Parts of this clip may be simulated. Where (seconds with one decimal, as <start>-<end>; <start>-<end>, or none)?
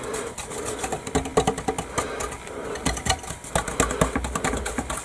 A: 2.8-3.5